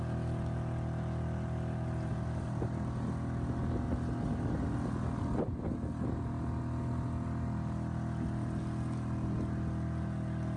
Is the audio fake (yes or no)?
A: no